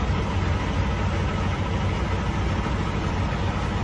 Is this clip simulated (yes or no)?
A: no